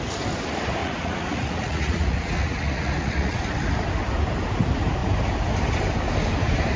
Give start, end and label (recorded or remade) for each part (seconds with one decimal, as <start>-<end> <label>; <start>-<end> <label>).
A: 0.0-0.8 recorded; 0.8-3.5 remade; 3.5-6.8 recorded